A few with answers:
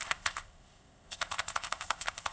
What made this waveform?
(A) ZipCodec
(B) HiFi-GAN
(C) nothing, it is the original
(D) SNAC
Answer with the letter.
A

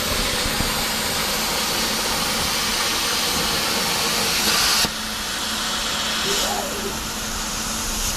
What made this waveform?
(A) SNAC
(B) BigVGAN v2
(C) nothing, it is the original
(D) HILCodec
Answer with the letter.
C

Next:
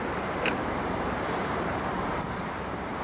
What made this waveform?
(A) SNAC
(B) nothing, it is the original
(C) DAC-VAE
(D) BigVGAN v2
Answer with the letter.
D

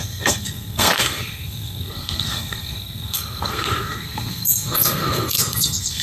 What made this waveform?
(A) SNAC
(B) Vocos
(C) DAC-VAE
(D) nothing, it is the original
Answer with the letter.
A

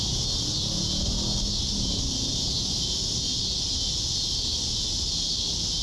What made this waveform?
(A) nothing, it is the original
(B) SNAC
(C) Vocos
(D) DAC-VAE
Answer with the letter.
A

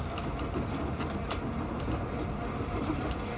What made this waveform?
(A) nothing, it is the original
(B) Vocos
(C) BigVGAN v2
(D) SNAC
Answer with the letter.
A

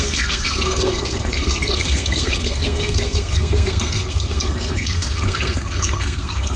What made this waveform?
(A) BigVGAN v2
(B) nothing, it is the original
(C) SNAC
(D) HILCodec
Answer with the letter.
C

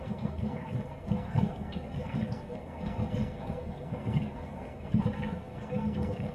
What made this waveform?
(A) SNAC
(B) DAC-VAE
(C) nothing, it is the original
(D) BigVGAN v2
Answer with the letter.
A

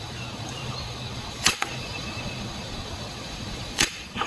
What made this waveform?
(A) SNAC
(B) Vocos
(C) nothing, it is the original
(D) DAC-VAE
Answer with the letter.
B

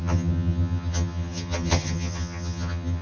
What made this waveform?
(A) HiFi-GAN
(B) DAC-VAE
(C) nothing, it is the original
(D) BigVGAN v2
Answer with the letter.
A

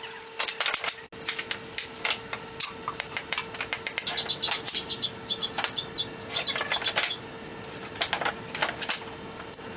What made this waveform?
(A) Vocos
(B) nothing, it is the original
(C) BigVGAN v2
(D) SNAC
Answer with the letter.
B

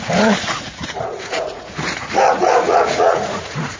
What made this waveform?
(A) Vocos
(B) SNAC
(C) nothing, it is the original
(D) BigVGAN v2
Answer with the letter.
A